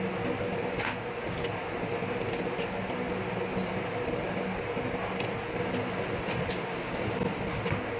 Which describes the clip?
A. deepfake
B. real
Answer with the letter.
B